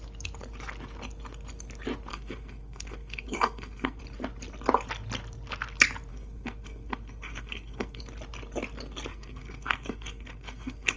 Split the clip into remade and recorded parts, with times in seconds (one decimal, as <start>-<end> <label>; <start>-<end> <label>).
0.0-2.1 recorded; 2.1-4.0 remade; 4.0-6.1 recorded; 6.1-8.0 remade; 8.0-9.1 recorded; 9.1-11.0 remade